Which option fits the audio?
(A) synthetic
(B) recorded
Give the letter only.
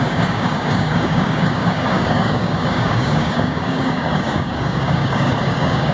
A